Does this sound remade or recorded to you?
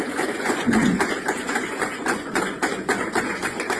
remade